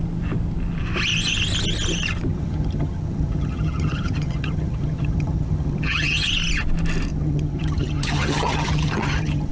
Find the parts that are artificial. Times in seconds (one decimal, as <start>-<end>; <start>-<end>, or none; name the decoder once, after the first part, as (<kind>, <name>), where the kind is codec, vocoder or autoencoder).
2.3-6.3 (vocoder, HiFi-GAN); 7.1-9.5